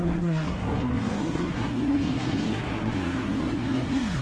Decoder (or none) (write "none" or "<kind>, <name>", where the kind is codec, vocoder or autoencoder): codec, SNAC